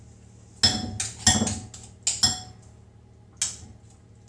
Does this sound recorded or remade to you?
recorded